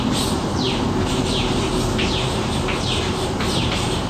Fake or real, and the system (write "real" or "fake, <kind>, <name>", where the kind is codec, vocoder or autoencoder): fake, vocoder, BigVGAN v2